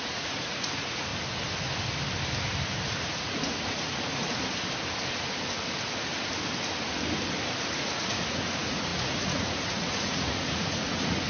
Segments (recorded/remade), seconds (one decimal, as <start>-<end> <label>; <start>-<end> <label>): 0.0-1.1 remade; 1.1-2.9 recorded; 2.9-4.3 remade; 4.3-7.7 recorded; 7.7-11.3 remade